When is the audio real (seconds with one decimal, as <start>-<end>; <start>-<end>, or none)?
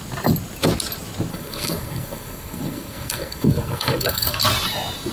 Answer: 0.0-1.3; 4.4-5.1